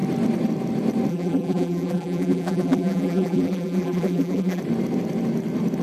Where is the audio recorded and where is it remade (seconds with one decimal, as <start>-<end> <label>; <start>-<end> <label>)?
0.0-1.1 recorded; 1.1-4.6 remade; 4.6-5.8 recorded